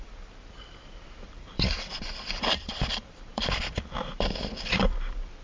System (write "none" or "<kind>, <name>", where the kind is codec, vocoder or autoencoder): vocoder, BigVGAN v2